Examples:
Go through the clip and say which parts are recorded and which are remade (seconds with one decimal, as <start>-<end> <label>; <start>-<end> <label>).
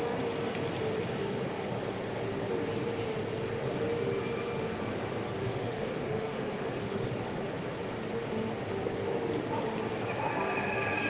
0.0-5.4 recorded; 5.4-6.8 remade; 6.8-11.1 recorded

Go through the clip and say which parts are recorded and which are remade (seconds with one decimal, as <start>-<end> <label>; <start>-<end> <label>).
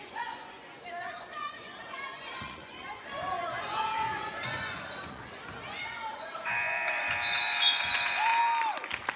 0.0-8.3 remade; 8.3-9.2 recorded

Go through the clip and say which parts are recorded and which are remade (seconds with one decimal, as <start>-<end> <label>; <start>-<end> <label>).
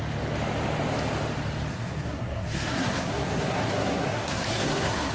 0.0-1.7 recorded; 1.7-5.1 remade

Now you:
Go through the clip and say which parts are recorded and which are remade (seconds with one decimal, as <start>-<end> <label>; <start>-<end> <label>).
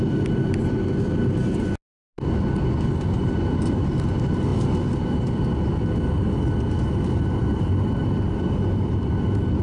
0.0-9.6 recorded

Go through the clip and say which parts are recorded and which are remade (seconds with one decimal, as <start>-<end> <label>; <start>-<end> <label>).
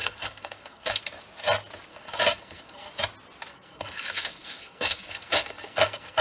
0.0-1.0 remade; 1.0-1.9 recorded; 1.9-2.9 remade; 2.9-3.5 recorded; 3.5-6.2 remade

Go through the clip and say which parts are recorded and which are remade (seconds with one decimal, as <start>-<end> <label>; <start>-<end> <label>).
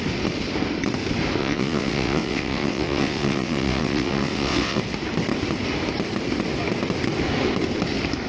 0.0-1.4 recorded; 1.4-4.8 remade; 4.8-8.3 recorded